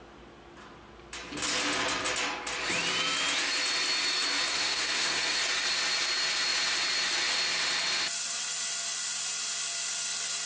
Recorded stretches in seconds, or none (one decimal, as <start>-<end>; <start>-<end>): 0.0-4.5; 5.4-10.5